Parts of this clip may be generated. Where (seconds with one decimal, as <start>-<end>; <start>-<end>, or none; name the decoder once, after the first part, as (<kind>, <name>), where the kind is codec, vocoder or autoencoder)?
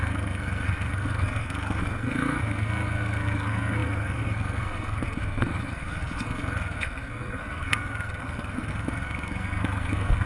0.0-10.3 (codec, SNAC)